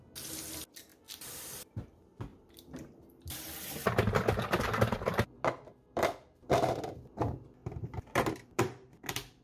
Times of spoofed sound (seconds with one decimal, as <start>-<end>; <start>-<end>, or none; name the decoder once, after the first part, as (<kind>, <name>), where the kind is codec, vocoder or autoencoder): 0.9-1.7 (vocoder, BigVGAN v2); 2.3-6.5; 7.6-8.9